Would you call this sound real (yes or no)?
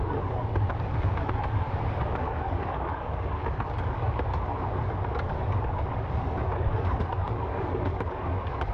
no